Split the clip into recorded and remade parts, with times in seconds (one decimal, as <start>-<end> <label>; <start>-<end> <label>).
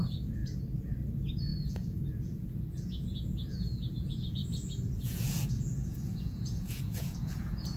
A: 0.0-0.4 remade; 0.4-1.1 recorded; 1.1-4.4 remade; 4.4-4.9 recorded; 4.9-7.8 remade